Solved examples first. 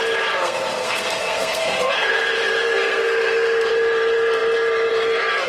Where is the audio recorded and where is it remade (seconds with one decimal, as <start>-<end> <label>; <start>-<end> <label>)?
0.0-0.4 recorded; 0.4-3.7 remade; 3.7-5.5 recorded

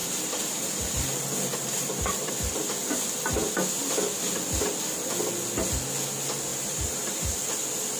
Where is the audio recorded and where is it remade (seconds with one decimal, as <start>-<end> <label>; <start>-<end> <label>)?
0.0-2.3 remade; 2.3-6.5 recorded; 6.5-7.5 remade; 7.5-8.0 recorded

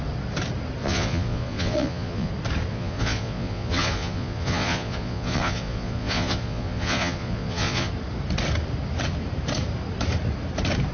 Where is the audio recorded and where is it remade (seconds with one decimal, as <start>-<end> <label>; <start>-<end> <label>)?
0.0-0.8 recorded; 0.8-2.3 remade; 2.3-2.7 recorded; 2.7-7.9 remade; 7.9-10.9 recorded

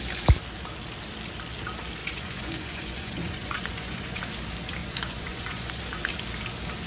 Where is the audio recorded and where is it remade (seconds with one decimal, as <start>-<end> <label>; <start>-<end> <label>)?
0.0-2.0 recorded; 2.0-4.2 remade; 4.2-4.8 recorded; 4.8-5.8 remade; 5.8-6.9 recorded

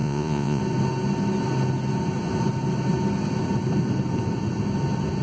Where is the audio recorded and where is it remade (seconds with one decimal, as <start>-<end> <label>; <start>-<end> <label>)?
0.0-0.6 remade; 0.6-5.2 recorded

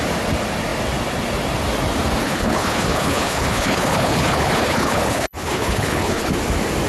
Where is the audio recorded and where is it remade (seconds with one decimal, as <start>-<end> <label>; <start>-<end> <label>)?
0.0-2.2 recorded; 2.2-6.3 remade; 6.3-6.9 recorded

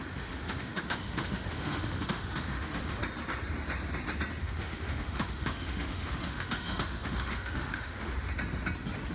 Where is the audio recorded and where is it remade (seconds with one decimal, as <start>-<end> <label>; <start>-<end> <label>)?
0.0-3.0 remade; 3.0-4.4 recorded; 4.4-8.1 remade; 8.1-9.1 recorded

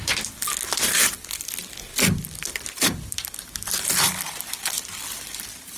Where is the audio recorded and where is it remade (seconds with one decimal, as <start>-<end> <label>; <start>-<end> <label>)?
0.0-5.8 recorded